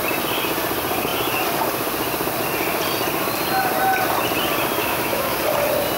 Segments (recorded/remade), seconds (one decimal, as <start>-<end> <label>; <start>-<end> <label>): 0.0-4.8 recorded; 4.8-5.4 remade; 5.4-6.0 recorded